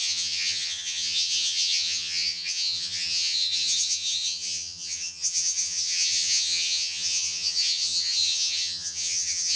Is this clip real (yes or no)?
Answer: no